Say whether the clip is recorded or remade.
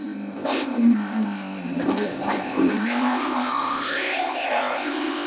remade